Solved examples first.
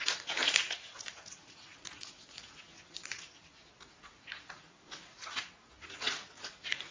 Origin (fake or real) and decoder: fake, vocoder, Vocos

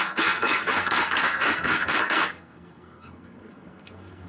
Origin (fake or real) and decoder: fake, codec, SNAC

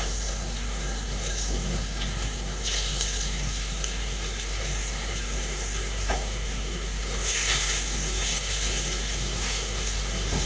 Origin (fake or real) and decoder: fake, codec, SNAC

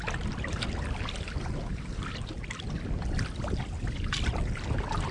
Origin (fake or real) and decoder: real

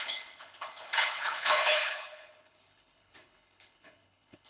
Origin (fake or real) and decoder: fake, codec, HILCodec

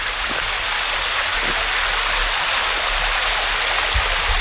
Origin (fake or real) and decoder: real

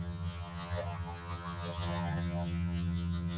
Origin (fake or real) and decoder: fake, vocoder, HiFi-GAN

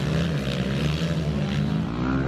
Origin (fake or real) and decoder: real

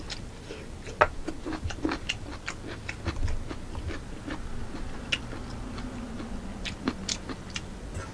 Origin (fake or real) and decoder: real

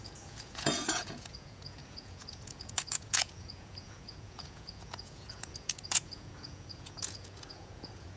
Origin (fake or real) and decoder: fake, vocoder, Vocos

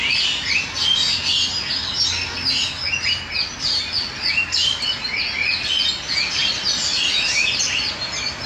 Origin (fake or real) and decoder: real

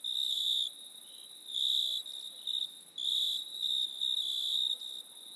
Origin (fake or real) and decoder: real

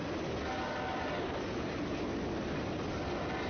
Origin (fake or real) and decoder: real